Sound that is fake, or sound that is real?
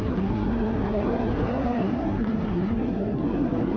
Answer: fake